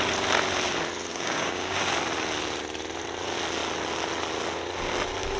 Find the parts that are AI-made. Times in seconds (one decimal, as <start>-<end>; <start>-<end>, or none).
1.1-1.8

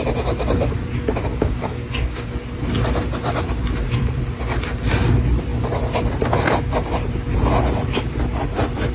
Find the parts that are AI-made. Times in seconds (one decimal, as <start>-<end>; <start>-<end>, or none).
1.3-2.3

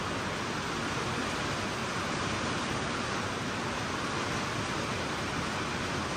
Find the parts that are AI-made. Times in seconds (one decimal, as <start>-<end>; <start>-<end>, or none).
none

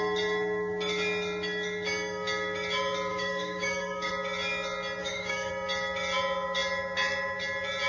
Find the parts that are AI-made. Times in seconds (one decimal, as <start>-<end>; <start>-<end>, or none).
3.1-4.1; 5.0-5.5